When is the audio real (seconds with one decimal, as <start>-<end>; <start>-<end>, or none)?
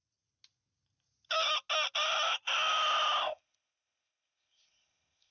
0.0-3.2